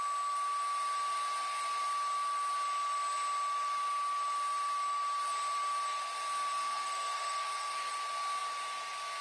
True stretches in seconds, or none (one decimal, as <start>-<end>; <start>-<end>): 0.0-6.5; 7.9-9.2